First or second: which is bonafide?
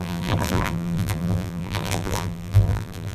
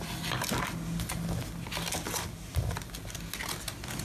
second